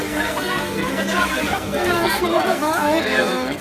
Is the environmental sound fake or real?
fake